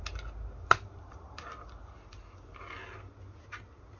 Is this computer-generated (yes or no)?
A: no